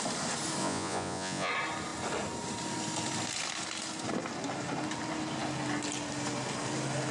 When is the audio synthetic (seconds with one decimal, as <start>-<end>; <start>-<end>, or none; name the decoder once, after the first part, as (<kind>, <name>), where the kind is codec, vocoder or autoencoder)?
0.6-1.5 (vocoder, Vocos)